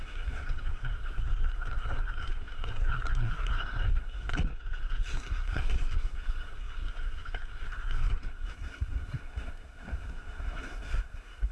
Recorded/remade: remade